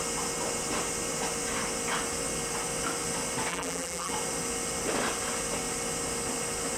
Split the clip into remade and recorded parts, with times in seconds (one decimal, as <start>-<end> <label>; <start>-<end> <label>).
0.0-3.5 recorded; 3.5-4.1 remade; 4.1-6.8 recorded